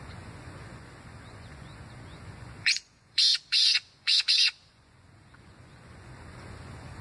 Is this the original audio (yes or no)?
no